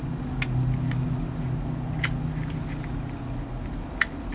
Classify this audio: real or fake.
real